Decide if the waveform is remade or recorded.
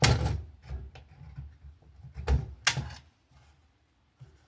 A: recorded